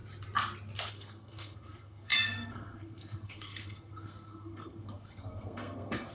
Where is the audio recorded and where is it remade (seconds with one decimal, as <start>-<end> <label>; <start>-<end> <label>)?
0.0-0.9 recorded; 0.9-6.1 remade